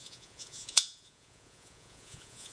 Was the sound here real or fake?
fake